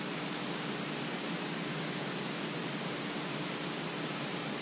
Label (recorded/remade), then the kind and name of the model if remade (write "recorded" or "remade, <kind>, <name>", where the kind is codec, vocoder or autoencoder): recorded